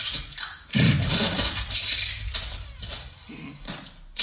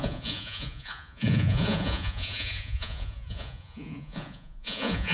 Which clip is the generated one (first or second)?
second